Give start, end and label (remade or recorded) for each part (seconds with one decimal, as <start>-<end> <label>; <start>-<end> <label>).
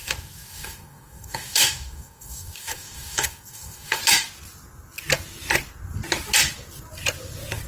0.0-4.0 remade; 4.0-7.7 recorded